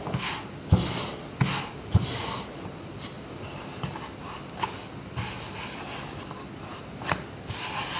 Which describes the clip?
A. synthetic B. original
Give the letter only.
B